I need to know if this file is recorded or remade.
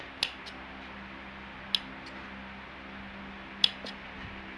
recorded